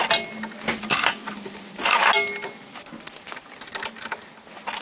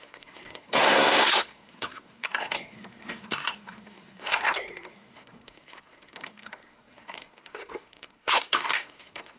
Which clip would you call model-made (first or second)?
second